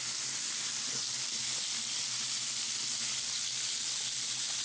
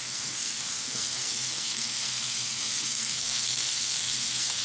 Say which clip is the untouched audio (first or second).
first